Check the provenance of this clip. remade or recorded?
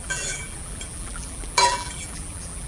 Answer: remade